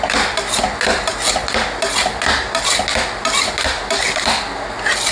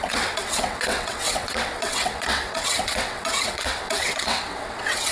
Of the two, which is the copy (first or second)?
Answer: second